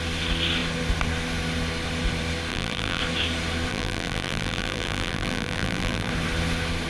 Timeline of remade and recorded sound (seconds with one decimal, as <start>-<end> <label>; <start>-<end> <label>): 0.0-2.5 recorded; 2.5-3.0 remade; 3.0-3.7 recorded; 3.7-6.1 remade; 6.1-6.9 recorded